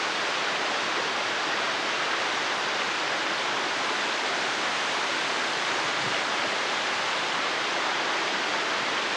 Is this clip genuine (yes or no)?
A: yes